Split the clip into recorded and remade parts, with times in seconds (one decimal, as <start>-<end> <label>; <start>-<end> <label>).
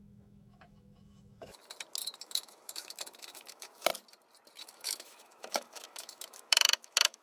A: 0.0-1.6 remade; 1.6-2.2 recorded; 2.2-3.9 remade; 3.9-4.6 recorded; 4.6-7.2 remade